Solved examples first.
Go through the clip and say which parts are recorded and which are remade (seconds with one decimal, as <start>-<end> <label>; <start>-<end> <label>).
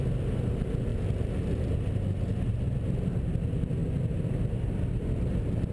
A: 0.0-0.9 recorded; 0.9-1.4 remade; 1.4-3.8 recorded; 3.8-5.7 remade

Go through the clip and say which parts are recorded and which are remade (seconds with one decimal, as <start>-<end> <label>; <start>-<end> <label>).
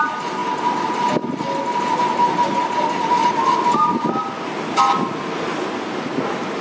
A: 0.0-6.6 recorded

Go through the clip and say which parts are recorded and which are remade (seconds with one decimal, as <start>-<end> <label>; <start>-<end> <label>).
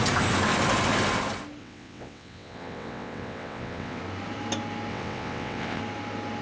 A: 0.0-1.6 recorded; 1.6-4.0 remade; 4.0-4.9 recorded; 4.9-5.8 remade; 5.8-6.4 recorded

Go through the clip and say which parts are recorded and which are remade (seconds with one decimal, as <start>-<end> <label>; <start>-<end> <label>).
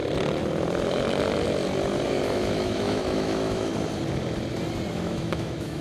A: 0.0-2.1 recorded; 2.1-3.7 remade; 3.7-4.9 recorded; 4.9-5.8 remade